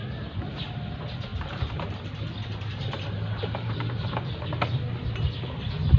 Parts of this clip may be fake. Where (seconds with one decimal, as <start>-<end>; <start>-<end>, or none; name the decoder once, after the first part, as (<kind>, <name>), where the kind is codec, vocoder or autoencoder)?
1.3-4.4 (vocoder, BigVGAN v2)